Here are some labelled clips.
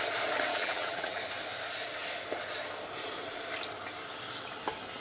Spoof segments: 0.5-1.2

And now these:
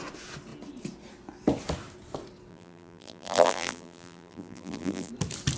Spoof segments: 2.5-5.1

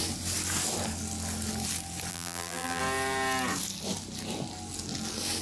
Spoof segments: 2.1-2.8

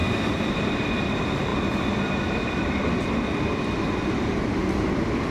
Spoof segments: 0.0-1.5; 2.1-5.3

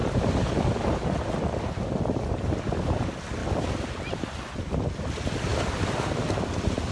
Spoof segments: 5.5-6.1

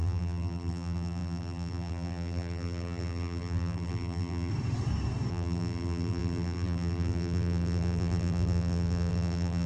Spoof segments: 0.0-4.5; 5.3-9.7

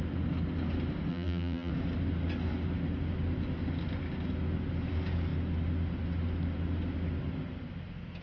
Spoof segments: 1.1-1.7

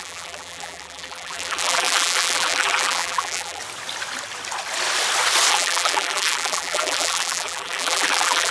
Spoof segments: 0.0-3.6; 5.5-8.5